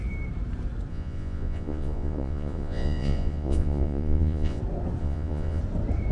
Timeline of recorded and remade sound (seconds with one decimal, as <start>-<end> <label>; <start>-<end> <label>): 0.0-0.9 recorded; 0.9-4.6 remade; 4.6-5.0 recorded; 5.0-5.6 remade; 5.6-6.1 recorded